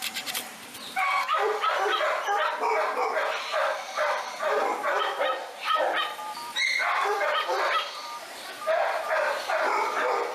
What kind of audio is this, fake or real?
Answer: fake